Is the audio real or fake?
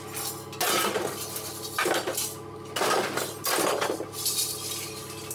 real